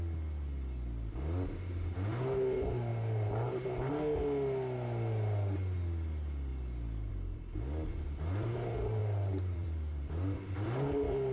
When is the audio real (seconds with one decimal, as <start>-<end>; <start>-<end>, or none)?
0.0-2.9; 3.9-9.0; 10.1-11.3

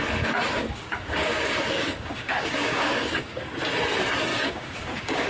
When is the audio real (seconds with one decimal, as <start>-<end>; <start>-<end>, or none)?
0.0-0.5; 3.5-4.3

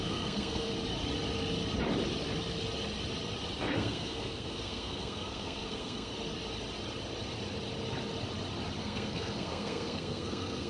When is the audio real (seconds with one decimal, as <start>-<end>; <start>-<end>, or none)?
0.7-3.6; 6.1-8.8

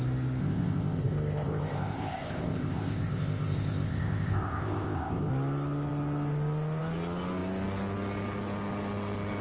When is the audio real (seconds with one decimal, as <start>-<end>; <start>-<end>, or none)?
0.0-0.4; 5.3-9.4